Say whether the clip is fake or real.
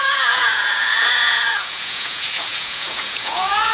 fake